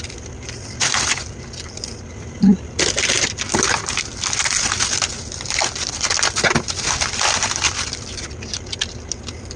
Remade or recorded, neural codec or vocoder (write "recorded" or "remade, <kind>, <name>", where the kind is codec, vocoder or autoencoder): remade, vocoder, BigVGAN v2